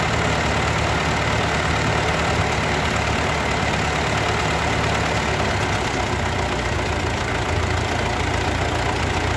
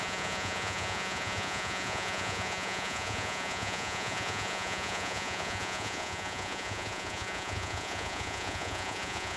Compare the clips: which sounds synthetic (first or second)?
second